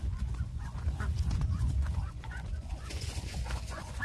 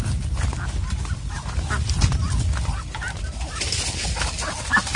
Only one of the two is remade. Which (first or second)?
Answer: first